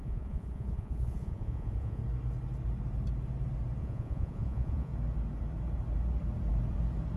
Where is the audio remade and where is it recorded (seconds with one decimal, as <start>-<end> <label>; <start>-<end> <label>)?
0.0-2.0 remade; 2.0-3.8 recorded; 3.8-4.9 remade; 4.9-7.2 recorded